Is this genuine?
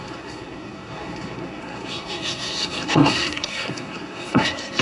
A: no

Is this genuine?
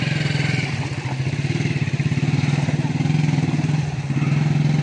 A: yes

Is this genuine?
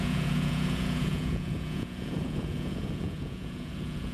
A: no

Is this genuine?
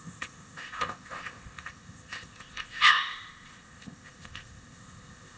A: no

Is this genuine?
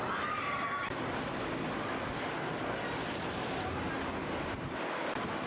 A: yes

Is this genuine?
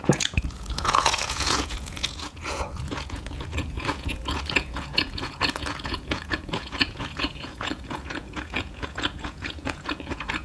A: no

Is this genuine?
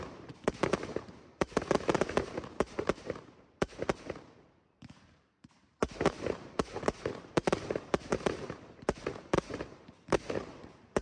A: no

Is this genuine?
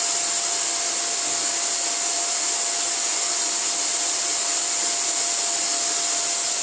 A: yes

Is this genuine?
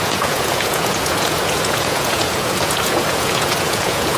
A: no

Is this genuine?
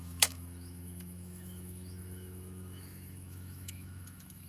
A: no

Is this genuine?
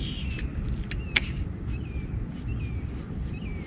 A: yes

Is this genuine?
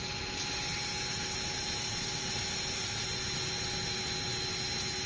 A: yes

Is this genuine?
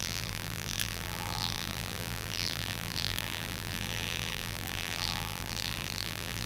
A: no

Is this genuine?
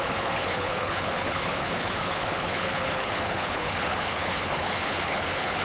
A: no